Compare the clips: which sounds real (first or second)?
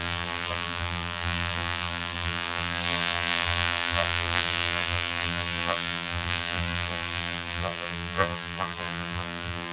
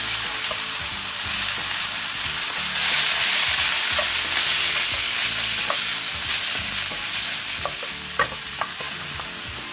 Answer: second